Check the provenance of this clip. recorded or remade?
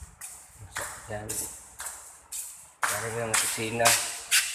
recorded